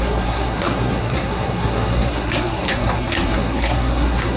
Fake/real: fake